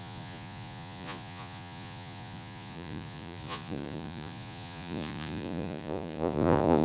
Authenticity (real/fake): fake